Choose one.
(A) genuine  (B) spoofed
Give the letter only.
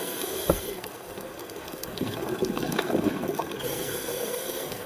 B